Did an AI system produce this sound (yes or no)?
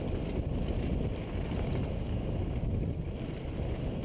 no